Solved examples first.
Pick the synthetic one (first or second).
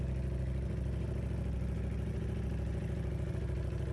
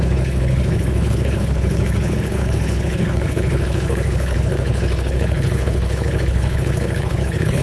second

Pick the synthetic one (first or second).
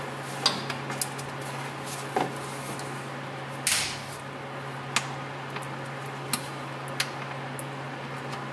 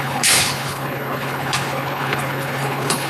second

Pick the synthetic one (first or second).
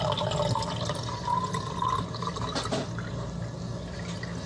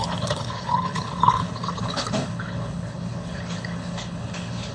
second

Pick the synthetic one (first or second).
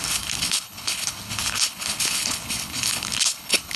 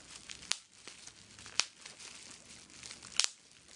first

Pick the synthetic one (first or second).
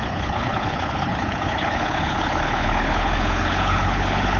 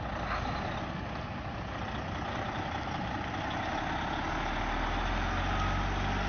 first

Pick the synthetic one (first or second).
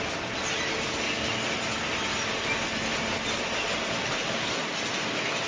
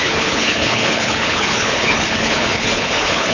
second